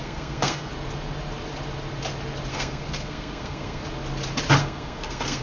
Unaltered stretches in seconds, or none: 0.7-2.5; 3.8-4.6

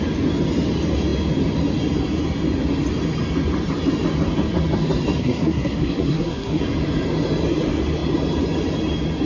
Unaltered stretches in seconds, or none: 0.0-5.2; 6.6-9.2

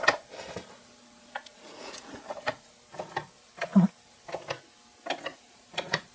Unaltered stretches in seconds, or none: 0.0-1.5; 2.7-5.3